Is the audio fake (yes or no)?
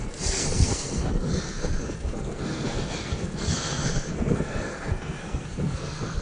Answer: yes